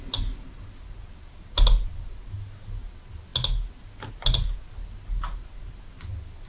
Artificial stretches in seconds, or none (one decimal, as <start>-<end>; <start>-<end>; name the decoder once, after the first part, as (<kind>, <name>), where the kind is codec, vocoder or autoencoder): none

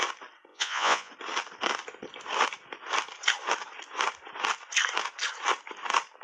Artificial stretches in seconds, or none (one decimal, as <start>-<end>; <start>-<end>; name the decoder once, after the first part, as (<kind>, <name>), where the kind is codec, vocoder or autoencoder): 0.5-1.1 (vocoder, Vocos)

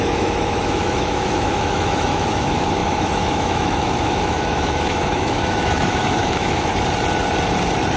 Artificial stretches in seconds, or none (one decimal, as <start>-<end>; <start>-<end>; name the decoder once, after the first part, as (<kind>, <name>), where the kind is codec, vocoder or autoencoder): 0.0-6.7 (autoencoder, DAC-VAE)

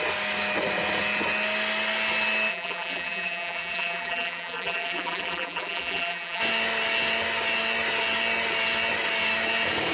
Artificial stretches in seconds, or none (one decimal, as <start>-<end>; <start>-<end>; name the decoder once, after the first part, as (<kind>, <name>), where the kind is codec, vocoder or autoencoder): 2.5-6.4 (vocoder, BigVGAN v2)

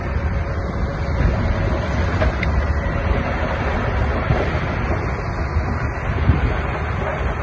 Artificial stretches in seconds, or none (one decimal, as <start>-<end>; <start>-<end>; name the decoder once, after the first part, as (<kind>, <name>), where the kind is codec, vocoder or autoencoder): none

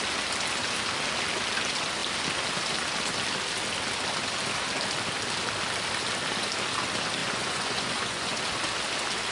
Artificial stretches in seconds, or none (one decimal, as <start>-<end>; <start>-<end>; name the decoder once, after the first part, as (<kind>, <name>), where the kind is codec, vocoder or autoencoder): 7.2-8.4 (vocoder, Vocos)